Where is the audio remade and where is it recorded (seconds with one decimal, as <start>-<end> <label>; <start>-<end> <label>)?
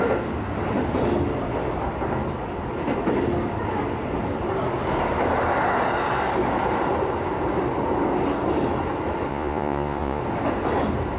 0.0-9.3 recorded; 9.3-10.2 remade; 10.2-11.2 recorded